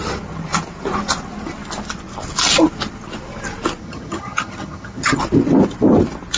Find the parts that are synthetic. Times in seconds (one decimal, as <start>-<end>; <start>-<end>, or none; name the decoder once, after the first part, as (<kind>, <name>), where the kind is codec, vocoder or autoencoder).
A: 3.8-5.2 (vocoder, HiFi-GAN)